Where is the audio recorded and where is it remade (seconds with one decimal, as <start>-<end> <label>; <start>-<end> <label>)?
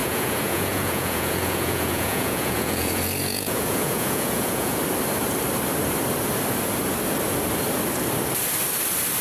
0.0-4.8 remade; 4.8-9.2 recorded